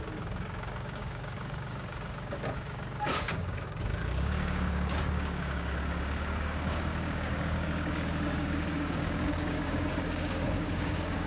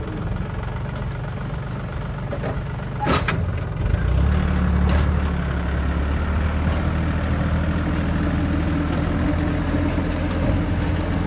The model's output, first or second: first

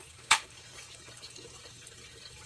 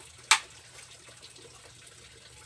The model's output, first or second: first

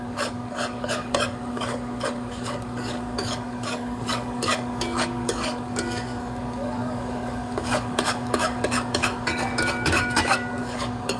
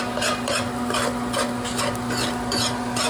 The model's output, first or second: first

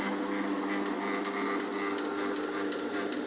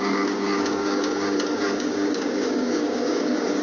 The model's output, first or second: second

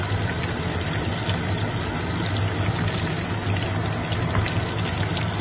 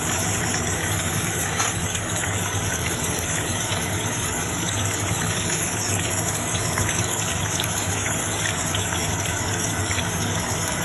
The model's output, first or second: second